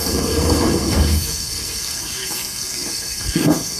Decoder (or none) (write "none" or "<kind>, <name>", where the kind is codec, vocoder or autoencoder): codec, SNAC